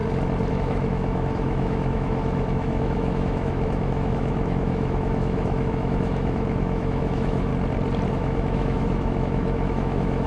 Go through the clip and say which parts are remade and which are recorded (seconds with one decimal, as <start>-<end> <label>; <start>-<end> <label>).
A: 0.0-0.5 recorded; 0.5-7.5 remade; 7.5-8.1 recorded; 8.1-10.3 remade